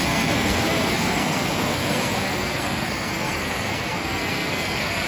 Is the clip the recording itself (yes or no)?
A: no